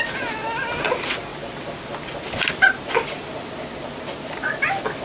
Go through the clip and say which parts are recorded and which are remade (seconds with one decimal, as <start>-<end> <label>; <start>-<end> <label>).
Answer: 0.0-5.0 recorded